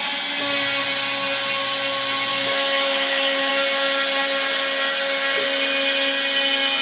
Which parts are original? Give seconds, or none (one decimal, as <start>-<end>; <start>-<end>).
0.0-2.3; 3.5-6.8

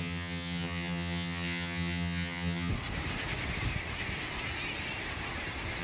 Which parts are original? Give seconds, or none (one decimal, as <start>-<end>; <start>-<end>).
2.7-5.8